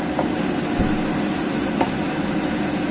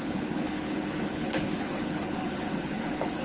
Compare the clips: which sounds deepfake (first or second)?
second